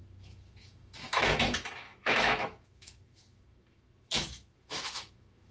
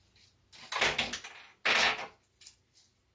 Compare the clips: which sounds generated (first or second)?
first